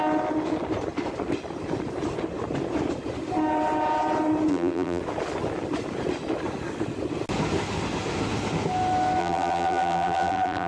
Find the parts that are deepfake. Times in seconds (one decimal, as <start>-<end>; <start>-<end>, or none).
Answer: 4.5-5.0; 9.2-10.7